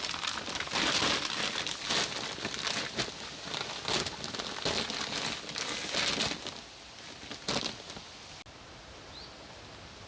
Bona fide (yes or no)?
yes